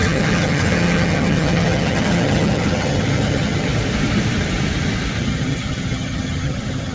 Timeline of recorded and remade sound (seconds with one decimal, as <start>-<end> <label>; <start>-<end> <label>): 0.0-3.7 remade; 3.7-5.2 recorded; 5.2-6.9 remade